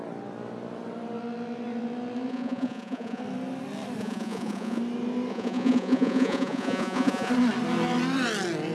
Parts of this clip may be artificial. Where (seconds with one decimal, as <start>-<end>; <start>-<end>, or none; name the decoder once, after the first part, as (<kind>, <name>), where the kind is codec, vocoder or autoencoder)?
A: 2.3-3.2 (vocoder, Vocos); 4.0-4.8; 5.3-7.3